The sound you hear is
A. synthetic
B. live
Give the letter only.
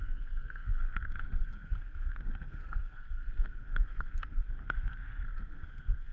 A